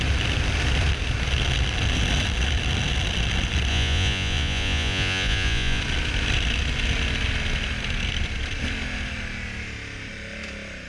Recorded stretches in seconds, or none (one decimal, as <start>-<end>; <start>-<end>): 0.0-3.7; 5.8-10.9